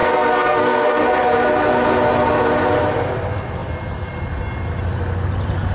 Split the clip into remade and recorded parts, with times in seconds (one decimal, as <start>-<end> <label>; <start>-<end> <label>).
0.0-1.0 remade; 1.0-5.7 recorded